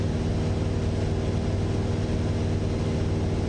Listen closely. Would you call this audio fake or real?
real